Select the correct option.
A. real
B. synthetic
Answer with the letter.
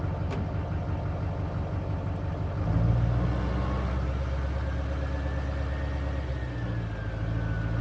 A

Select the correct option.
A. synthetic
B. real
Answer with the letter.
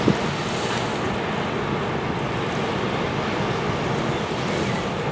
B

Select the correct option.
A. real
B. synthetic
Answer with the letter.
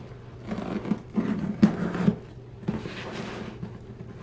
A